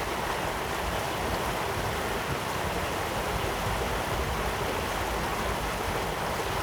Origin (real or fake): real